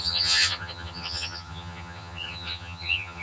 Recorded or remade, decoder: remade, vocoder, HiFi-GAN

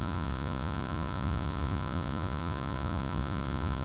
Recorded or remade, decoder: remade, vocoder, Vocos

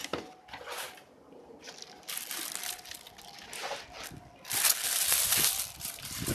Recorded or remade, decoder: recorded